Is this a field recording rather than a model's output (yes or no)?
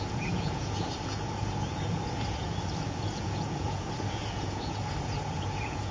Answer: no